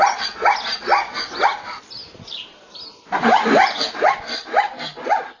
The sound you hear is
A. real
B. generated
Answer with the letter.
A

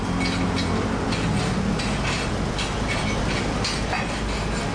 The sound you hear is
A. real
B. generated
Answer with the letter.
A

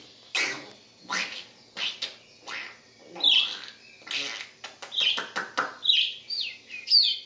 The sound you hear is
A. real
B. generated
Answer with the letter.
A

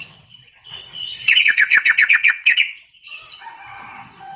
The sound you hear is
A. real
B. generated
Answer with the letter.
B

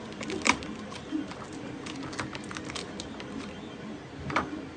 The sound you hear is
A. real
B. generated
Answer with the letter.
A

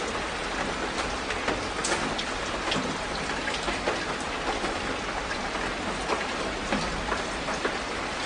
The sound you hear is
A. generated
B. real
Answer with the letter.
B